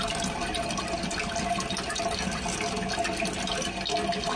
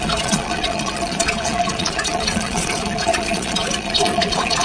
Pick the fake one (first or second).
second